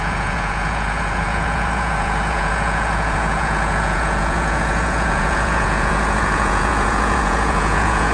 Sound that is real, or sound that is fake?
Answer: fake